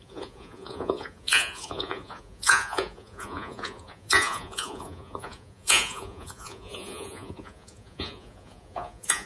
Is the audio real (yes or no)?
no